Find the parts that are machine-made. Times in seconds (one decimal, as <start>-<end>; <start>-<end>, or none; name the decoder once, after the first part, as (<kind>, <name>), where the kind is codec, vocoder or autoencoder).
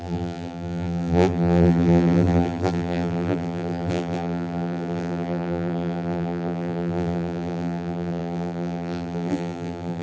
0.0-10.0 (vocoder, BigVGAN v2)